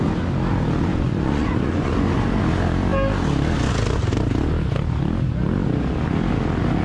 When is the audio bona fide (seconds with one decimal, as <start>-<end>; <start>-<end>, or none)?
0.0-0.9; 2.2-6.8